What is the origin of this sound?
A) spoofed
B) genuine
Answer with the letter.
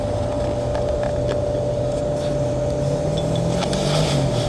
B